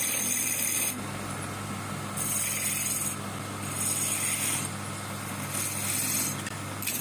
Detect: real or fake real